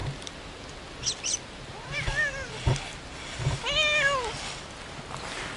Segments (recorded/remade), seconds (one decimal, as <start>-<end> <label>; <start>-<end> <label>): 0.0-5.6 recorded